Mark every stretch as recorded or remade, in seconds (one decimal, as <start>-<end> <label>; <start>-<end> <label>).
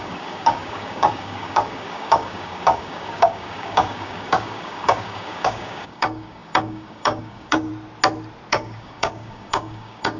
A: 0.0-7.7 remade; 7.7-8.5 recorded; 8.5-10.2 remade